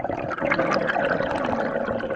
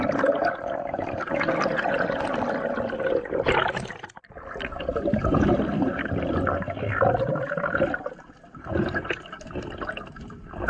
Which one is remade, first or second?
first